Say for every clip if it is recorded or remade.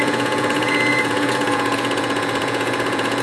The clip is remade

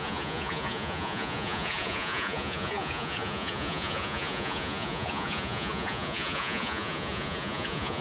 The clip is remade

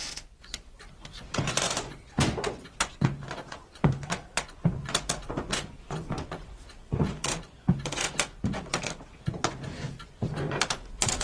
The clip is remade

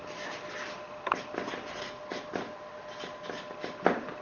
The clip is recorded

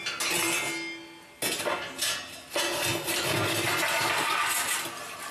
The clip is recorded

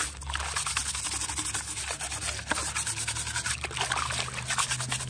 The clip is recorded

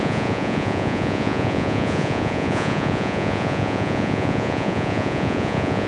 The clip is remade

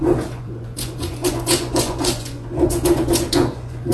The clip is remade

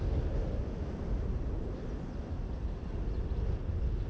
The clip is recorded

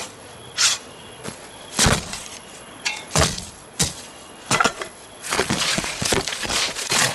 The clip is remade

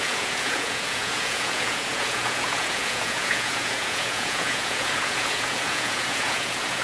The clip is remade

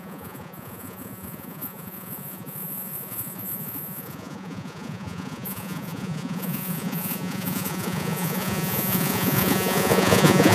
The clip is remade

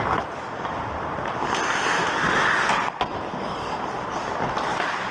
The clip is recorded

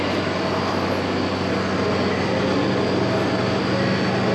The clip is recorded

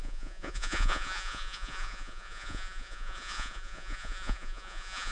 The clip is remade